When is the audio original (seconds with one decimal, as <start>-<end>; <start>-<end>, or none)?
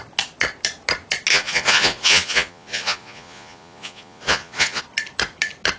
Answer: 0.0-1.3; 4.8-5.8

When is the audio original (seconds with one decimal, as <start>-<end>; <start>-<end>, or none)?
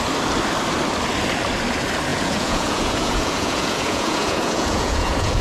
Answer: 0.0-2.1